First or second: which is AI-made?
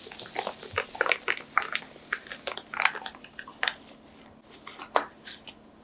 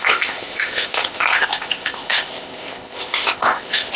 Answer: second